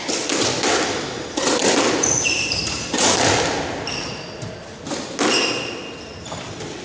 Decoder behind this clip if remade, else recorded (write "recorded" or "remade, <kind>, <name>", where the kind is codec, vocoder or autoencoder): recorded